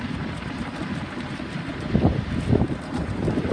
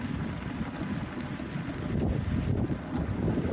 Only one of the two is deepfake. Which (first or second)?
first